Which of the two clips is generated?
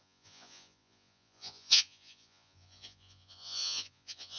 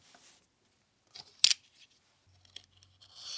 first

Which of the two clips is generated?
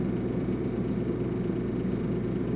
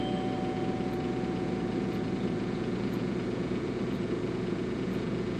second